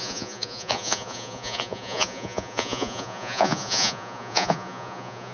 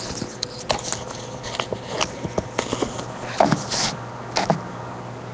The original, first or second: second